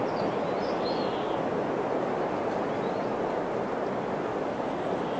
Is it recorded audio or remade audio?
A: recorded